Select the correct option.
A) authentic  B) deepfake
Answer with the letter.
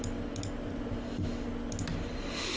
A